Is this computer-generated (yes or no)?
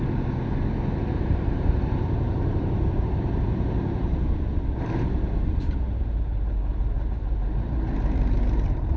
yes